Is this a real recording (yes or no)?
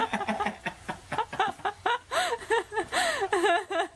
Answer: yes